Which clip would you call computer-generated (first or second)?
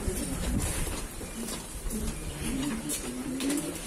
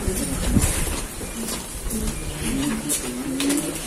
first